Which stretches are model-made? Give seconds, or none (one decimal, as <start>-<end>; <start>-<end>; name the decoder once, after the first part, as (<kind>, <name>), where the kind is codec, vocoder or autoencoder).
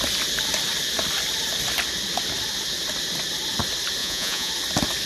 4.0-4.5 (vocoder, Vocos)